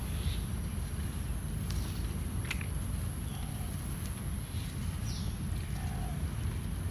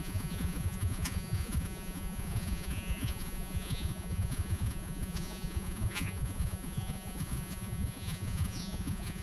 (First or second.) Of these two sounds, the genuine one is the first